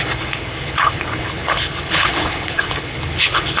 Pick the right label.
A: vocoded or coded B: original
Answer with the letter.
A